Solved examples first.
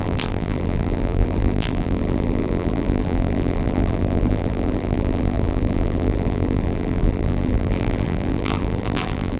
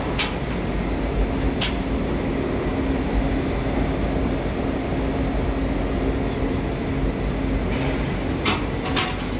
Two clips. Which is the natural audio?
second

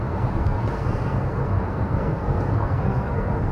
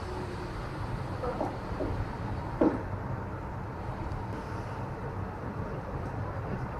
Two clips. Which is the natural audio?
second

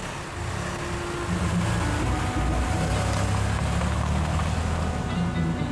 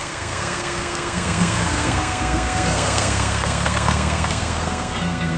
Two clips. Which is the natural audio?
first